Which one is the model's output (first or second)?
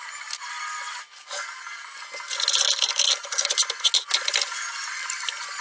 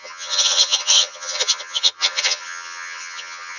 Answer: second